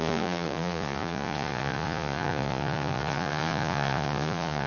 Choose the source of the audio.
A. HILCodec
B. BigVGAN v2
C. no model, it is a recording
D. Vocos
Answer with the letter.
D